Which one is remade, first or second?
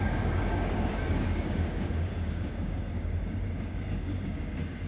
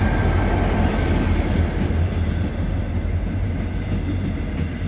first